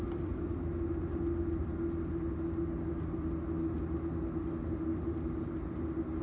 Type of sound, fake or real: real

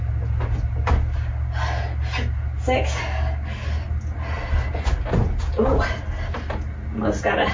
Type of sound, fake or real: real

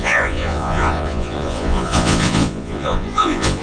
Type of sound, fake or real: fake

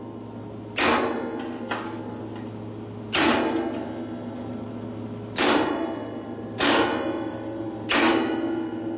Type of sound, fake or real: real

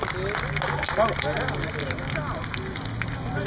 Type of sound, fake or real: real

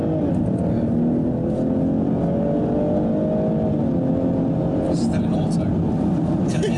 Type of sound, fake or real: real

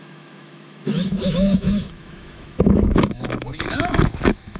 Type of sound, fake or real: fake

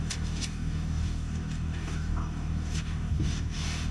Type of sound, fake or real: fake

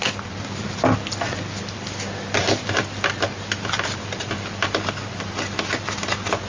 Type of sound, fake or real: real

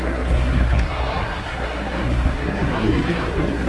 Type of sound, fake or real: fake